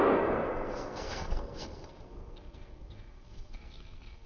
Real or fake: fake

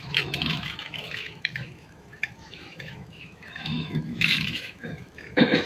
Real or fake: fake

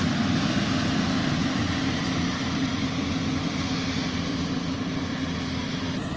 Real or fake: real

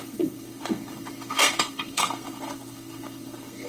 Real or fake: fake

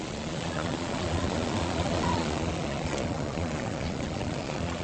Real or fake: fake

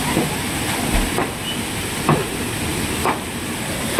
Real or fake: real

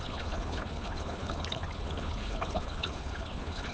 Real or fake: fake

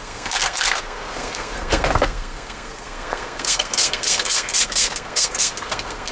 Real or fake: fake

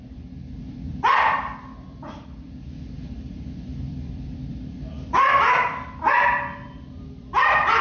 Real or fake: fake